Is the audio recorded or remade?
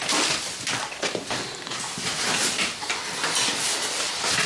recorded